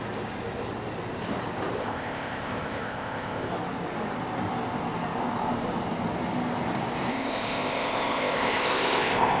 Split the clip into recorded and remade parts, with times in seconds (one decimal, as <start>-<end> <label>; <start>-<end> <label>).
0.0-1.8 recorded; 1.8-3.5 remade; 3.5-7.1 recorded; 7.1-9.4 remade